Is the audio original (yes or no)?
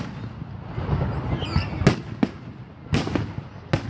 yes